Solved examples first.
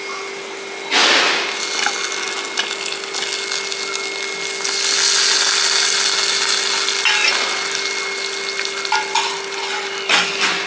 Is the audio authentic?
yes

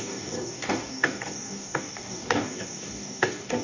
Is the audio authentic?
no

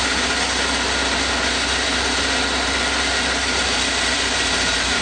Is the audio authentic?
yes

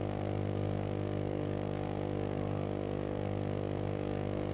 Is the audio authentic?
no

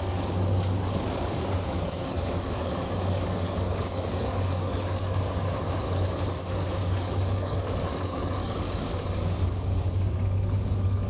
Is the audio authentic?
no